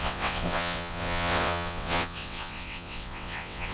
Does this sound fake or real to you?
fake